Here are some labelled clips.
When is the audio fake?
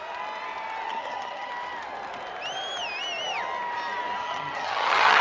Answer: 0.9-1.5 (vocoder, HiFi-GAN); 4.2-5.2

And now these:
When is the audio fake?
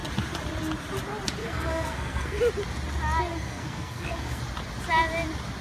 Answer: 1.4-2.4 (codec, SNAC); 3.3-4.4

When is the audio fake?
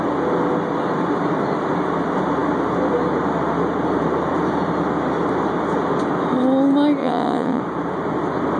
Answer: 7.0-7.6 (vocoder, WaveNeXt)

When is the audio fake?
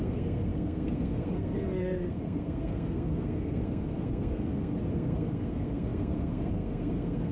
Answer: 0.0-7.3 (codec, SNAC)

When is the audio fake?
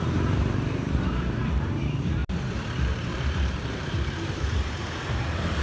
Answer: 0.0-2.2 (vocoder, BigVGAN v2); 2.8-5.6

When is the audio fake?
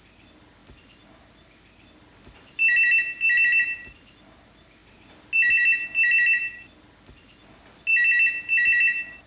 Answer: none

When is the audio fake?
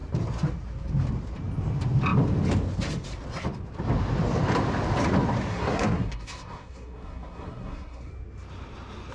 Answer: 5.5-8.1 (codec, SNAC)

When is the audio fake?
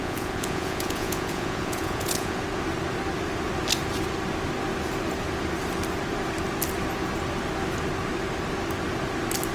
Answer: 0.0-2.4 (vocoder, Vocos)